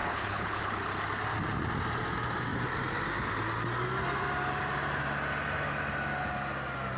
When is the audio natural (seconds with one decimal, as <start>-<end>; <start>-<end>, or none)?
0.8-7.0